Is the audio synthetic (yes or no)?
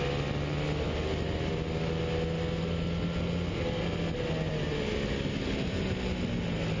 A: no